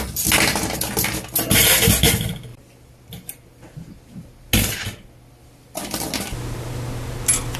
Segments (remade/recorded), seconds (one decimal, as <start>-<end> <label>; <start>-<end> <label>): 0.0-7.6 recorded